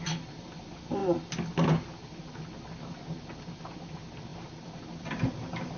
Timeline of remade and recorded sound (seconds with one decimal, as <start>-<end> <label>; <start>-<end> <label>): 0.0-4.3 recorded; 4.3-5.3 remade; 5.3-5.8 recorded

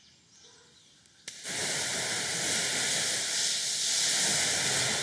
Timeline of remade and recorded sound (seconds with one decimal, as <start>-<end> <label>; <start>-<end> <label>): 0.0-1.6 recorded; 1.6-2.3 remade; 2.3-5.0 recorded